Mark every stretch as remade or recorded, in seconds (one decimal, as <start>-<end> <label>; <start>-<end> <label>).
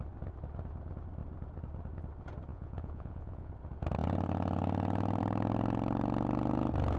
0.0-2.5 recorded; 2.5-3.5 remade; 3.5-7.0 recorded